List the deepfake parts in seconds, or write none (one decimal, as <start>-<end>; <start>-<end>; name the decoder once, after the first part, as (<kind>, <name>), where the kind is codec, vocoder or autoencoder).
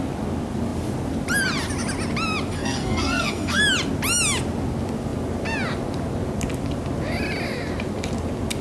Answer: 2.5-3.6 (codec, SNAC)